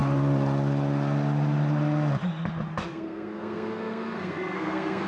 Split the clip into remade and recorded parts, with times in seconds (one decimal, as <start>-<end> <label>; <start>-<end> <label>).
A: 0.0-2.9 recorded; 2.9-5.1 remade